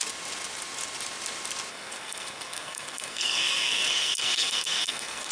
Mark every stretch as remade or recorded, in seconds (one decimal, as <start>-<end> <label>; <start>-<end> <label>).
0.0-1.7 recorded; 1.7-5.3 remade